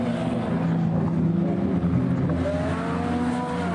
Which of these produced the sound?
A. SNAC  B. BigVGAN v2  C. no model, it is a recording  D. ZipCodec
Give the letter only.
C